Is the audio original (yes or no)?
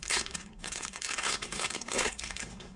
no